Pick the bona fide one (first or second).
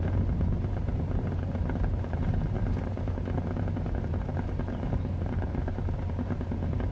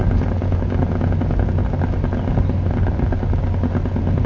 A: second